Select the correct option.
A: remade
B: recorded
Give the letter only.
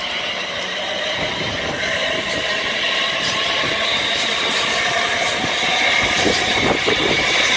A